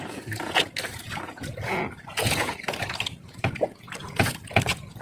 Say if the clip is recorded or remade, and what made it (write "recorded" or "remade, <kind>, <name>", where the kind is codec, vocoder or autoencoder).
remade, vocoder, Vocos